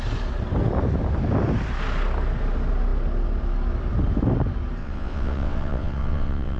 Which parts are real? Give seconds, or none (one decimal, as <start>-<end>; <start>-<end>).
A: 0.0-4.8